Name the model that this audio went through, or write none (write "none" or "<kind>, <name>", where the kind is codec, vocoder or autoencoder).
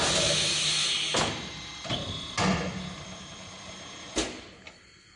none